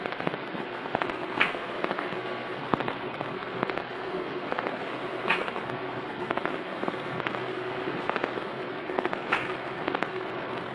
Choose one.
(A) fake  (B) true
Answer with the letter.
A